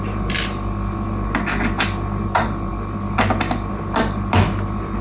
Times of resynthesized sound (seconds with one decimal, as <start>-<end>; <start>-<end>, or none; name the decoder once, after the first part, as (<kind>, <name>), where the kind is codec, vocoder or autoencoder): none